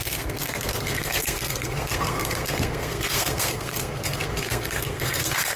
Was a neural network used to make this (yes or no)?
yes